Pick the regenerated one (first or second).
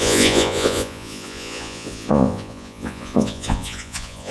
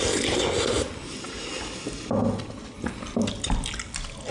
first